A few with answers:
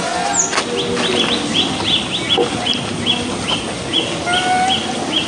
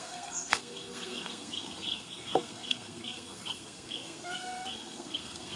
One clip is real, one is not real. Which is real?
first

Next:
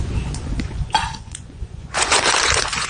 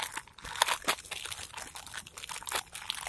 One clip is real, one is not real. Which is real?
second